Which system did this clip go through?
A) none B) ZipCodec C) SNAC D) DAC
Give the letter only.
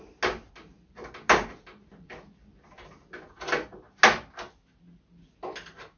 A